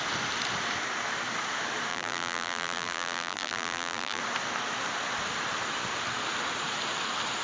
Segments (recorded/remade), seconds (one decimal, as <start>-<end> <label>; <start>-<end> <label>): 0.0-1.9 recorded; 1.9-4.2 remade; 4.2-7.4 recorded